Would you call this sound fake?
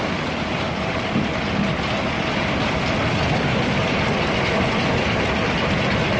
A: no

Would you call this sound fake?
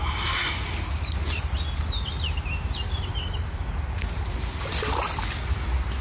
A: no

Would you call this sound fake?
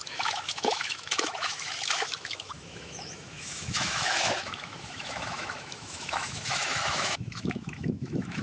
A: yes